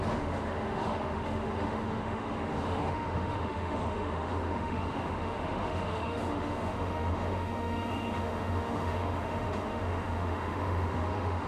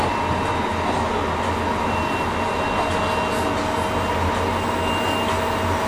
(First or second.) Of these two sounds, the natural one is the second